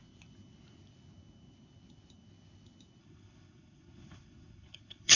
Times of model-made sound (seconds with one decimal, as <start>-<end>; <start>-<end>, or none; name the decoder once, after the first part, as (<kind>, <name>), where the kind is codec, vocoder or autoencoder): 3.0-5.2 (codec, HILCodec)